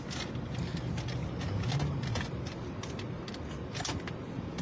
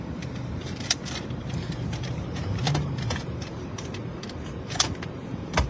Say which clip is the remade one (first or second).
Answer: second